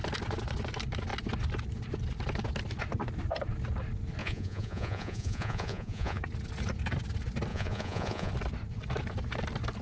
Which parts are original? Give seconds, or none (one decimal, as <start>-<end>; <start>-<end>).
0.0-4.2; 6.2-7.5; 8.3-9.8